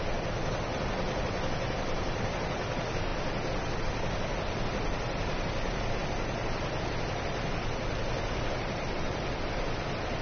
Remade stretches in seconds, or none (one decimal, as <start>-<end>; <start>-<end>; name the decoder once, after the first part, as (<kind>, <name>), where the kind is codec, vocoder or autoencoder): none